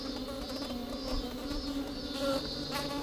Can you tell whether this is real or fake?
real